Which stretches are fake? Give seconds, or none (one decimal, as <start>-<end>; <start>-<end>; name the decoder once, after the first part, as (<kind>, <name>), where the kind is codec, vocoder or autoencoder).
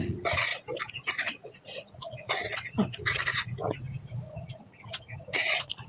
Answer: 0.0-0.5 (vocoder, Vocos); 1.1-5.9